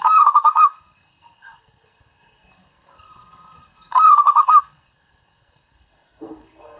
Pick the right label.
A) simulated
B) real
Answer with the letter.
A